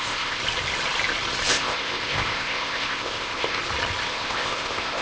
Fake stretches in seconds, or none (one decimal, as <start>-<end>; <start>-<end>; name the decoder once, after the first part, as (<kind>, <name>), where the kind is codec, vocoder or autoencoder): 0.0-0.4 (codec, ZipCodec); 1.5-3.6; 4.1-5.0